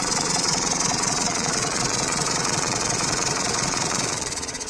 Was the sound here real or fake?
fake